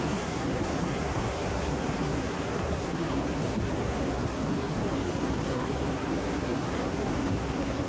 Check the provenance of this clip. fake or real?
fake